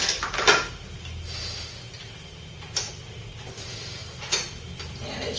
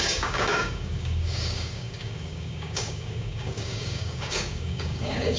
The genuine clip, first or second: first